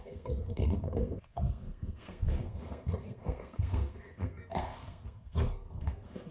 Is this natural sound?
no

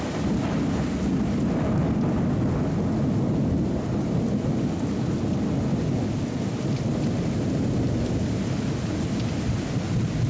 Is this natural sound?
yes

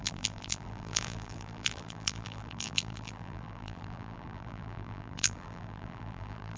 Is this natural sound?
no